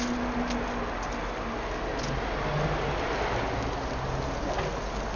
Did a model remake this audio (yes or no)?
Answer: no